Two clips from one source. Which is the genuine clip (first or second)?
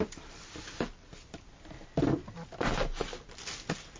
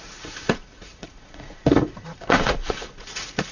first